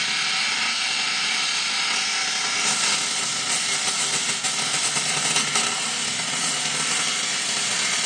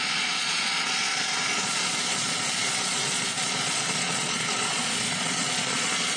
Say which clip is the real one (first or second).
first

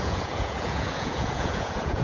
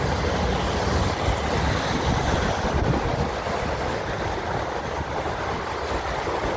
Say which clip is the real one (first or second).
second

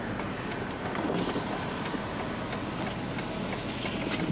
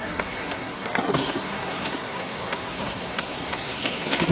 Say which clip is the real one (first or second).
first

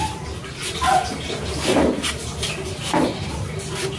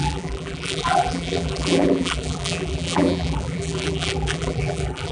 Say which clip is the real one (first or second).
first